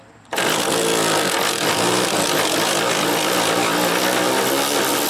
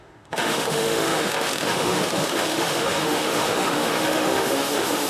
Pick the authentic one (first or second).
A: first